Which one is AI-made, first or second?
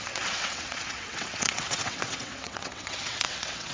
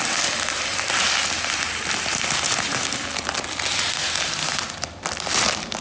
first